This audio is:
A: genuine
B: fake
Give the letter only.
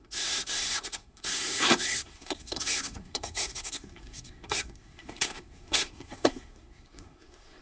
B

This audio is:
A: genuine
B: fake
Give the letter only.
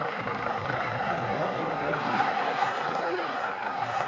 B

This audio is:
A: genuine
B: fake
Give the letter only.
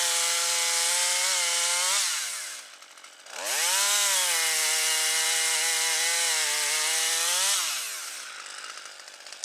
A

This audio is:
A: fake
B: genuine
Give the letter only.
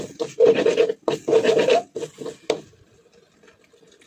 B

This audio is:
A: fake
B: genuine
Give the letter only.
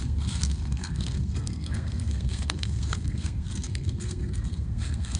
A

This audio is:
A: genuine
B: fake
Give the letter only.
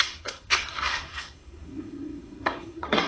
B